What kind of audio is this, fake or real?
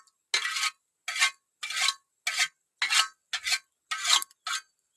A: real